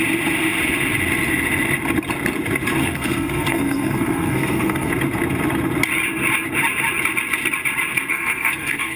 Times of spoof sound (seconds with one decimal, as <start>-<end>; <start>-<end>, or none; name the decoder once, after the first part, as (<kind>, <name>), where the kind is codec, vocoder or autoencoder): 2.8-4.9 (codec, SNAC); 8.1-9.0